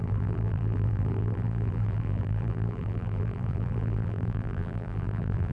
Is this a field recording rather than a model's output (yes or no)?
no